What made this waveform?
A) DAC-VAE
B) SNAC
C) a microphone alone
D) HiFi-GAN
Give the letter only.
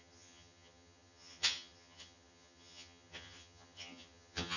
D